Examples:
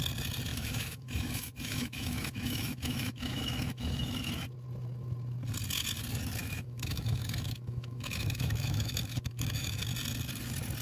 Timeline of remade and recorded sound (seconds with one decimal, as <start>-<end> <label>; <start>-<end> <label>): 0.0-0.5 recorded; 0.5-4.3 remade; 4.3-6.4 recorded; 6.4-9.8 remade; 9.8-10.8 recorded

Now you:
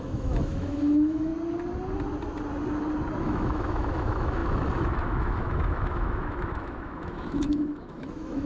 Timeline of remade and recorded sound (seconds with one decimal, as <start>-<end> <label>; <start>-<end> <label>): 0.0-1.3 remade; 1.3-3.2 recorded; 3.2-8.5 remade

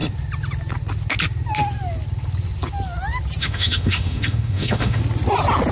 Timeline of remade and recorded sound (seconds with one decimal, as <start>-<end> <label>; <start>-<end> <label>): 0.0-3.4 recorded; 3.4-5.0 remade; 5.0-5.7 recorded